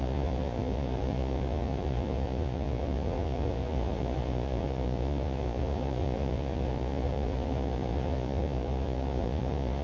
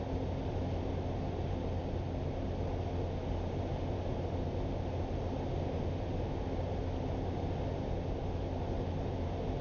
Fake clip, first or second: first